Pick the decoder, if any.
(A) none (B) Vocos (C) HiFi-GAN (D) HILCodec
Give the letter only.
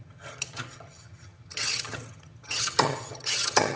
C